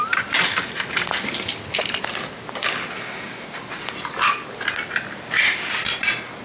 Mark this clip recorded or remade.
recorded